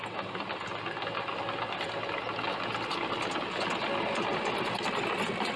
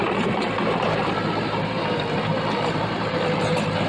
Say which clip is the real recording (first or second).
first